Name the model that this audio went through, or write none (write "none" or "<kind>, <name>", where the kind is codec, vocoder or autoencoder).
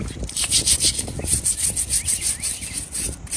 none